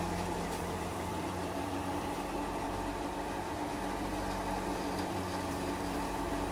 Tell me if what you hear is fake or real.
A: fake